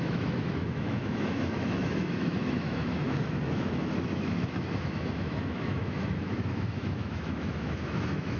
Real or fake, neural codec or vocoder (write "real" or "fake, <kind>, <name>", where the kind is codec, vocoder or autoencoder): fake, autoencoder, DAC-VAE